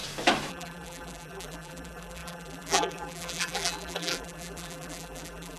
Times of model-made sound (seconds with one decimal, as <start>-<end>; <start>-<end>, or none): 0.5-5.6